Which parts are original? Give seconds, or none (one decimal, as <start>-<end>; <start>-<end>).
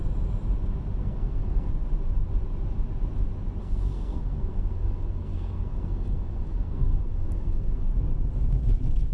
0.0-1.0; 1.7-3.6; 7.9-9.1